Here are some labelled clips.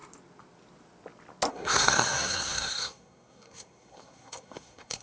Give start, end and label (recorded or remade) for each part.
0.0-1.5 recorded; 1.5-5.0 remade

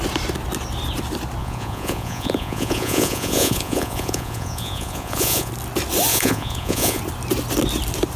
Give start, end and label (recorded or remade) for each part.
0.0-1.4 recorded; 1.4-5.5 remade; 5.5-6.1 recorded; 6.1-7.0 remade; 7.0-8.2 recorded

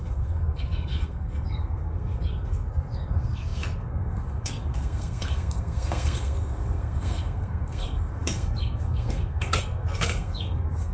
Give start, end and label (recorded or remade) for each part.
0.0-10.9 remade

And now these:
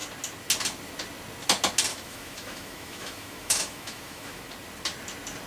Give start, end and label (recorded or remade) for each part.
0.0-1.9 recorded; 1.9-4.4 remade; 4.4-5.5 recorded

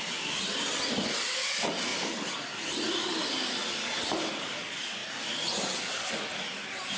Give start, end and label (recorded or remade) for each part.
0.0-7.0 recorded

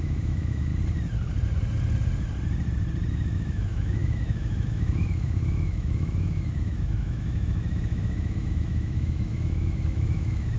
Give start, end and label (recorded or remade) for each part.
0.0-0.7 remade; 0.7-3.1 recorded; 3.1-10.6 remade

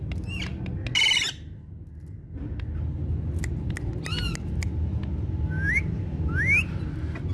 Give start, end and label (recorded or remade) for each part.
0.0-7.3 recorded